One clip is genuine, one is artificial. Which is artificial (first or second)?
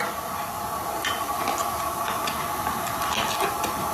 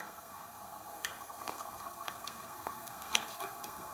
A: second